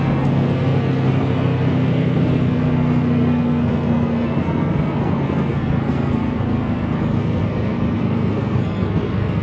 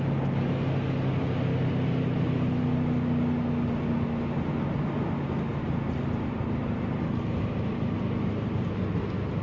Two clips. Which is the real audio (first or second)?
second